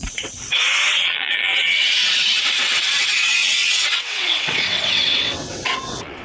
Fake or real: fake